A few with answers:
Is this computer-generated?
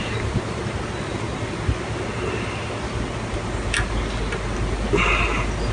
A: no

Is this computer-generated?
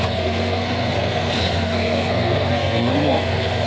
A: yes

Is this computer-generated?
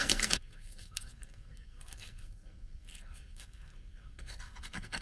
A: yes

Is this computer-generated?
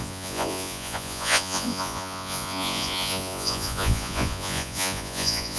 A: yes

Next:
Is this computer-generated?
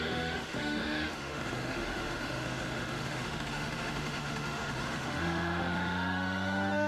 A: yes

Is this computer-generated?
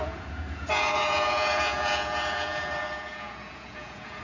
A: yes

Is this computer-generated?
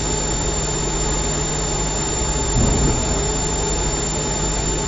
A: no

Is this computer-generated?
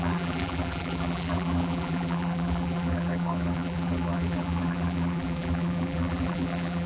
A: yes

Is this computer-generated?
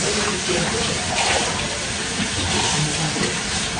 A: no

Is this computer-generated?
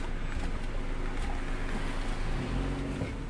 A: no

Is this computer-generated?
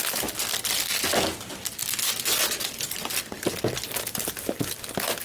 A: no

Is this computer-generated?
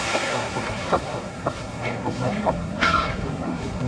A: yes